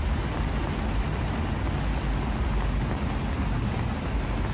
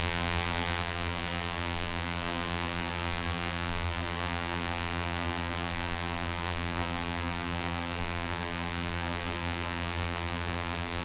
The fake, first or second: second